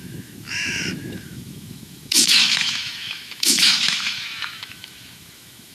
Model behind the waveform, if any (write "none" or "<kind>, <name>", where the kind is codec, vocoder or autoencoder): autoencoder, DAC-VAE